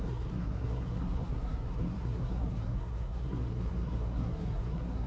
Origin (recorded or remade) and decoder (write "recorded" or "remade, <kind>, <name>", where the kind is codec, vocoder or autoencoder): remade, codec, SNAC